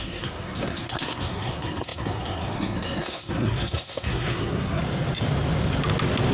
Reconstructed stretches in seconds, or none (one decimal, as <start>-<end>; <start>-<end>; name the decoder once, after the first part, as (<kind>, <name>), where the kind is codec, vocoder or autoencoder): 0.0-4.8 (codec, SNAC)